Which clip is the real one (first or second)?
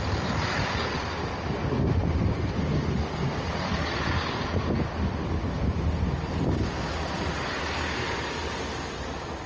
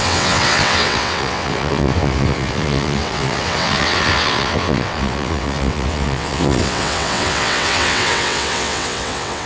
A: first